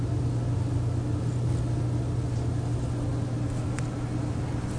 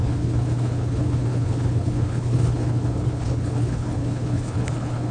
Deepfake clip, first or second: second